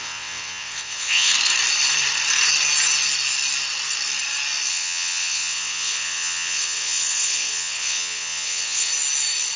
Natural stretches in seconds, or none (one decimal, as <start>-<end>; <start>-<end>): 1.3-4.7; 8.9-9.6